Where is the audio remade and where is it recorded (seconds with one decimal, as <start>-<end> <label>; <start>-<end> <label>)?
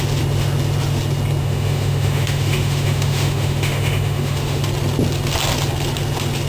0.0-1.4 recorded; 1.4-4.6 remade; 4.6-6.5 recorded